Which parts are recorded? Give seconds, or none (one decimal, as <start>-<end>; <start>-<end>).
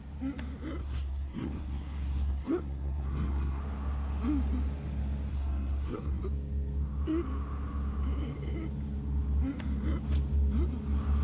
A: 0.0-0.8; 3.6-5.3; 6.2-11.2